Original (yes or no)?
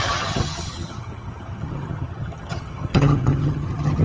no